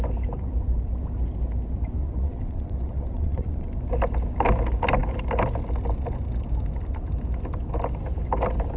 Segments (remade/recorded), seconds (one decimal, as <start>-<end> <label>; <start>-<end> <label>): 0.0-2.0 recorded; 2.0-3.7 remade; 3.7-8.8 recorded